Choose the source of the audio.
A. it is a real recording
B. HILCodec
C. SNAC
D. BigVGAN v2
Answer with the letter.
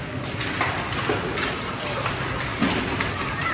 A